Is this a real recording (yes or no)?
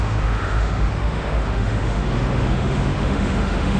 no